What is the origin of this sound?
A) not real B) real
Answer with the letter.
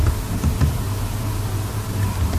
B